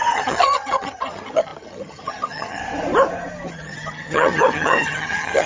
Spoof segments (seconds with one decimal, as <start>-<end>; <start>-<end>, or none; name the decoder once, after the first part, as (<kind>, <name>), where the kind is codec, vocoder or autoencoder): 0.0-2.6 (vocoder, HiFi-GAN); 3.5-5.5